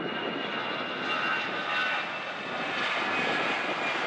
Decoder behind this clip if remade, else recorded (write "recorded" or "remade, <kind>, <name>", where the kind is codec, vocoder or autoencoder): recorded